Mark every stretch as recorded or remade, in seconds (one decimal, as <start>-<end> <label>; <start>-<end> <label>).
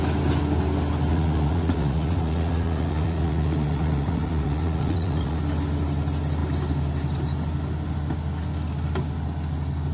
0.0-1.1 recorded; 1.1-5.4 remade; 5.4-9.9 recorded